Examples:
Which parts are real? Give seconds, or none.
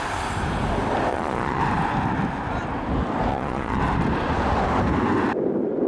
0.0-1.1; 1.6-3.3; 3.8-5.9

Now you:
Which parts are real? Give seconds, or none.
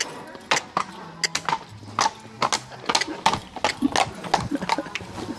0.0-5.4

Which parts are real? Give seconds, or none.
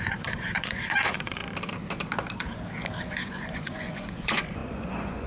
1.4-3.0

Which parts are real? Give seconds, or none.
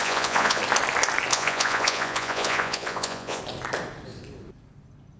0.6-1.3; 3.4-5.2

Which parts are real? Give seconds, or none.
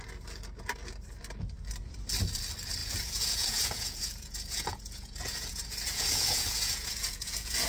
0.0-2.8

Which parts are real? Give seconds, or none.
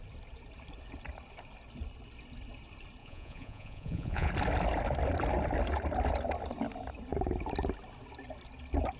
0.0-3.0; 4.3-9.0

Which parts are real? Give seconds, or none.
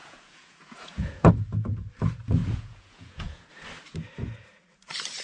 1.3-2.4; 3.5-5.2